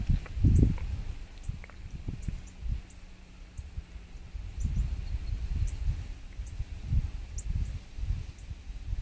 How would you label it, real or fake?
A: real